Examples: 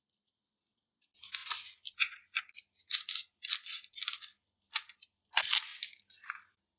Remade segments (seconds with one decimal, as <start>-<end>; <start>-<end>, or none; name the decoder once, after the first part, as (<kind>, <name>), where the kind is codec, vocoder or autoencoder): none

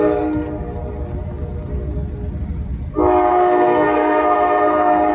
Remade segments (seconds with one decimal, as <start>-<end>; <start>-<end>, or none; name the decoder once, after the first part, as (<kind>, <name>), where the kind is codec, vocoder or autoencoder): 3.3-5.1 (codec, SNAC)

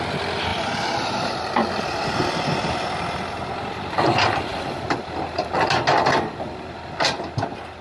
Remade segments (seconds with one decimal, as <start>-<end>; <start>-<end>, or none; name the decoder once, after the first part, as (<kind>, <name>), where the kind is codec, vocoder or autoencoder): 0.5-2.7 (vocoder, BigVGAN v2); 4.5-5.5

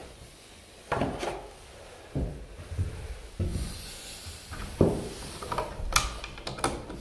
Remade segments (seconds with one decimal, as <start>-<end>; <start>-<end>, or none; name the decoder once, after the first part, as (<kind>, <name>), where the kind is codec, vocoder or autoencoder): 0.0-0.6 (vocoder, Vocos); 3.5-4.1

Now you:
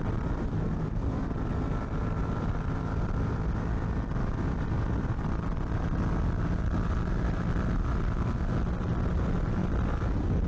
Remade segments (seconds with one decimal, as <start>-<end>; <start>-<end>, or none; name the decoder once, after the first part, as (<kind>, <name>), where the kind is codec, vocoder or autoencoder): none

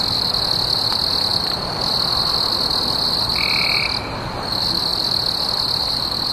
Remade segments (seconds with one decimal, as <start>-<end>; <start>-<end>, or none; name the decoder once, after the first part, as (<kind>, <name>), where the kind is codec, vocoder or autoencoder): none